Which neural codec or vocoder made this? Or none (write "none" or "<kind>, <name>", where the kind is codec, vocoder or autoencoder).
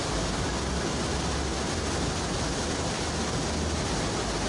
none